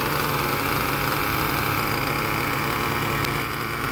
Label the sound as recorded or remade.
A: recorded